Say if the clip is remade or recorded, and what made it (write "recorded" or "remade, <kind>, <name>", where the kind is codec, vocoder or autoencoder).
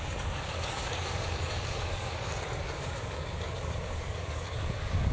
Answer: remade, codec, DAC